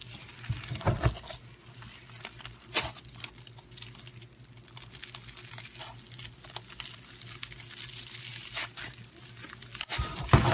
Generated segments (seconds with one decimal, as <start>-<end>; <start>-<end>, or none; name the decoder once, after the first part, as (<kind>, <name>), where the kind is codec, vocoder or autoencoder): none